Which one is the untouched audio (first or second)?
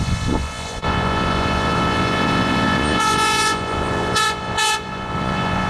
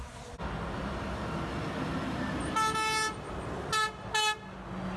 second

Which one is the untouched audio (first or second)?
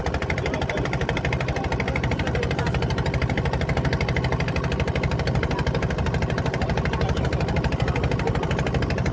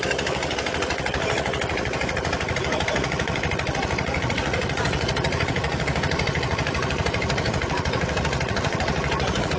first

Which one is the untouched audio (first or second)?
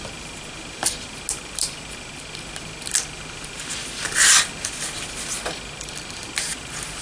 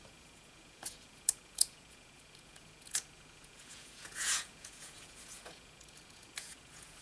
first